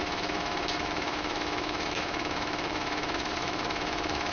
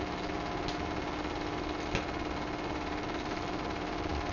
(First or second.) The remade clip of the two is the first